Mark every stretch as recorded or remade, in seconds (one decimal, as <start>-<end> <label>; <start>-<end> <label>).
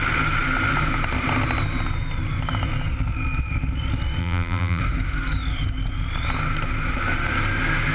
0.0-4.2 recorded; 4.2-4.8 remade; 4.8-7.9 recorded